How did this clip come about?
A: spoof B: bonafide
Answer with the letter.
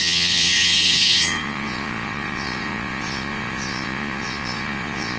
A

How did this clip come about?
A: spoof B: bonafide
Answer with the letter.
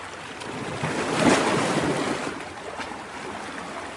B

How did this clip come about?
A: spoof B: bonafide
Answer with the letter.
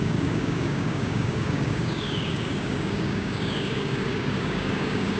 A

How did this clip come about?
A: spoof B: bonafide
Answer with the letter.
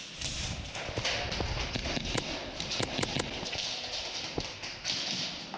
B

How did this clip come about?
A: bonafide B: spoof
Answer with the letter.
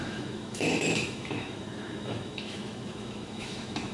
B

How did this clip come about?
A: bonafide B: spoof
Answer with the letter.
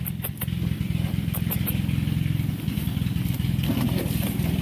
A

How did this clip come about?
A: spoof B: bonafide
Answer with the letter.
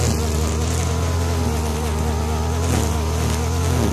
B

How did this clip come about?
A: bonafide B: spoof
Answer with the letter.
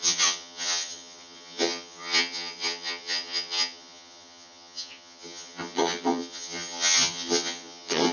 B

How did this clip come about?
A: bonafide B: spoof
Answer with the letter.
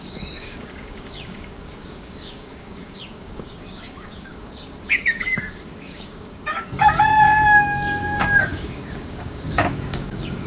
B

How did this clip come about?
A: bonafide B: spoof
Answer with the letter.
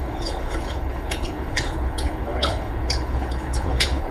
B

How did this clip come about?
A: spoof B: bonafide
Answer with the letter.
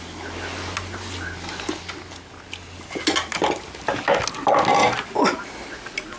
B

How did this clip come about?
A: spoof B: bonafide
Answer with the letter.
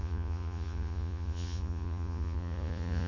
A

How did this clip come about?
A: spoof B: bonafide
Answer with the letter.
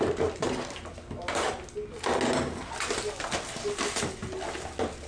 B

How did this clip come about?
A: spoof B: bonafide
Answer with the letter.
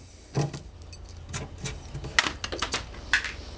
B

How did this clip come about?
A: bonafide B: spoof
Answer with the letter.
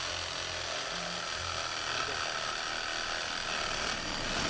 A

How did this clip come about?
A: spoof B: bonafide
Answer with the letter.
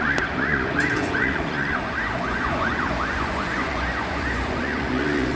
A